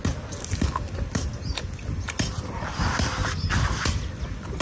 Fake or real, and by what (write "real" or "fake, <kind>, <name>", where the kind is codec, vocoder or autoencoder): real